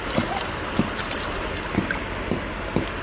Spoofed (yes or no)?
no